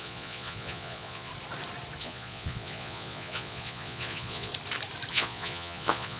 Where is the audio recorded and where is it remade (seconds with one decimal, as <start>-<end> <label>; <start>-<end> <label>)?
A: 0.0-1.3 remade; 1.3-2.0 recorded; 2.0-4.5 remade; 4.5-5.1 recorded; 5.1-6.2 remade